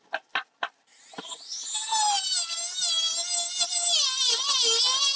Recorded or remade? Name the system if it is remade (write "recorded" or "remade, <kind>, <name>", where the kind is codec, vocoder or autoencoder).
recorded